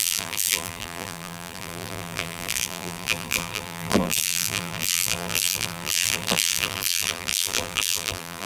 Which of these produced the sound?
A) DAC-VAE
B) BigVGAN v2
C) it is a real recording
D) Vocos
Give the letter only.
B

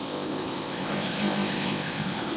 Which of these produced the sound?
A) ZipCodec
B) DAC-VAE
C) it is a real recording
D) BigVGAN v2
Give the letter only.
A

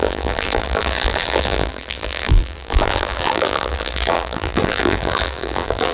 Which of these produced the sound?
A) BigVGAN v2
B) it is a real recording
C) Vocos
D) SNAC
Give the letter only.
A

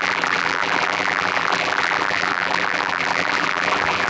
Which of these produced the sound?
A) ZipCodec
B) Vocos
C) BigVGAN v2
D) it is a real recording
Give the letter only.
C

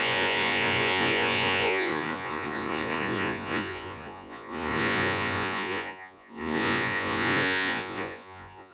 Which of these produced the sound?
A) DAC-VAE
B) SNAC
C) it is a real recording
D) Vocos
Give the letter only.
D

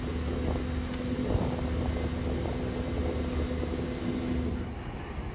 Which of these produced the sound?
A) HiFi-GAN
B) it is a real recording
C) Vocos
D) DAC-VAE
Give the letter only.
B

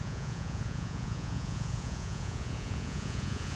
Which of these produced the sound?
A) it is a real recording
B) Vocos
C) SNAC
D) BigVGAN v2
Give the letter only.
B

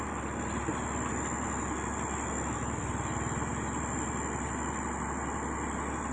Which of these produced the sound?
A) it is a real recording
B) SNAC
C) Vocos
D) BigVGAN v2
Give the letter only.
A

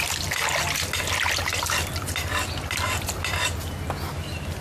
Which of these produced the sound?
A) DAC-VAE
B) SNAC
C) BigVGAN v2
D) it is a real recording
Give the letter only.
D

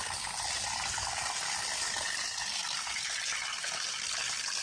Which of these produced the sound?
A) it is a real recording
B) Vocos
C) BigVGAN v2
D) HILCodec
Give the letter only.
A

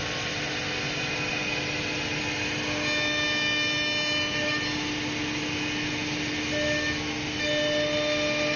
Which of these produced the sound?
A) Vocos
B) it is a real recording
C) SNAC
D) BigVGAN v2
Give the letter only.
B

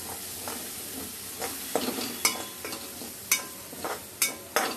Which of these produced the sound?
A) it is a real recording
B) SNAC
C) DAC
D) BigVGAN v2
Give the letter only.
A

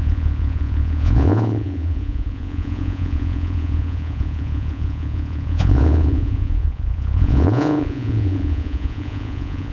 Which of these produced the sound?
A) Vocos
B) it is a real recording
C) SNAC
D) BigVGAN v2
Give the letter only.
A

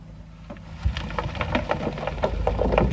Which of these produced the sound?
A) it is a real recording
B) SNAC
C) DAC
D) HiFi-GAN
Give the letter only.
A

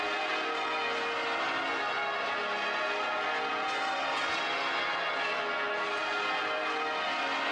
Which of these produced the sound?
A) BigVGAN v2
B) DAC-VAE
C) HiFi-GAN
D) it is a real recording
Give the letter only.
D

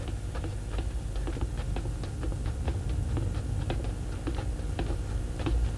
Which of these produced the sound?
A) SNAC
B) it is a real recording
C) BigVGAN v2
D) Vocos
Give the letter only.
B